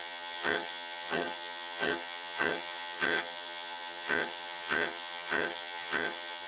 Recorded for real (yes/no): no